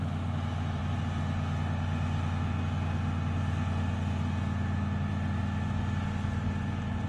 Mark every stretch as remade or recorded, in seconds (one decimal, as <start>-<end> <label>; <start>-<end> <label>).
0.0-7.1 recorded